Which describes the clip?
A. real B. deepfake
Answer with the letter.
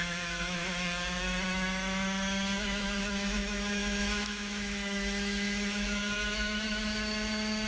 B